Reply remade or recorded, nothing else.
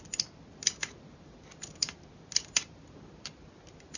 recorded